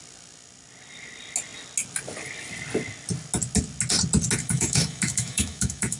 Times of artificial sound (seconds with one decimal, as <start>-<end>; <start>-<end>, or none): 4.4-6.0